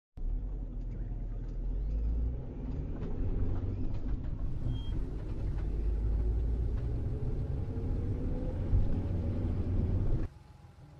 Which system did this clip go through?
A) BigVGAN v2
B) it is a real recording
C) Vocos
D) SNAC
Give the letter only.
B